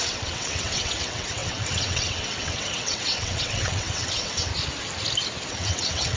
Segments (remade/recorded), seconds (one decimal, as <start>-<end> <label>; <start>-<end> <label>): 0.0-4.5 remade; 4.5-5.5 recorded; 5.5-6.2 remade